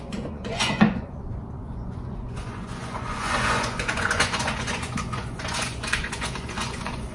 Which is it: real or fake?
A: fake